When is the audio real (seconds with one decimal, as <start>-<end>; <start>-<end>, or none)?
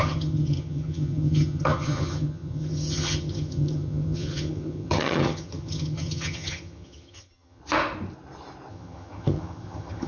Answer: 7.6-8.7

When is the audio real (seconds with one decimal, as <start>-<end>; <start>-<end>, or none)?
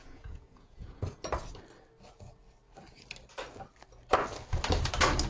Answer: 1.0-5.3